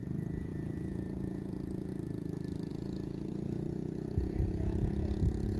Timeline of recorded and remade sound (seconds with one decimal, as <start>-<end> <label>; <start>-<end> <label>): 0.0-1.9 remade; 1.9-2.7 recorded; 2.7-5.6 remade